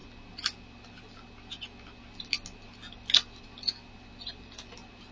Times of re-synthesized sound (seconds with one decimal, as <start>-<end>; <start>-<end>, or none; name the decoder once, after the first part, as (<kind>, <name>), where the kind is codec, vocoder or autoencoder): none